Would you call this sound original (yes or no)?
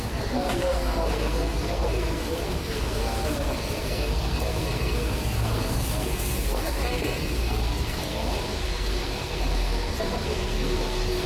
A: no